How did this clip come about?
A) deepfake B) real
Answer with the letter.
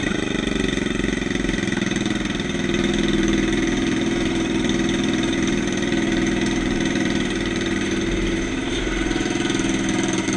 A